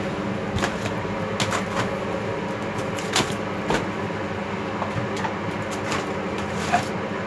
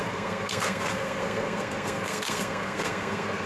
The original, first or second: first